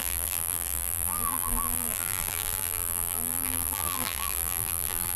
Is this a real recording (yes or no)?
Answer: no